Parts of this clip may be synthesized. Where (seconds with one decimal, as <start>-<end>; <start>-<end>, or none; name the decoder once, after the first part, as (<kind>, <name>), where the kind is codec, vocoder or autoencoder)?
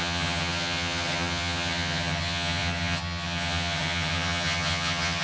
0.0-5.2 (vocoder, HiFi-GAN)